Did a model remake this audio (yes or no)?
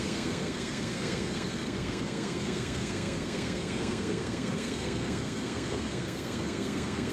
yes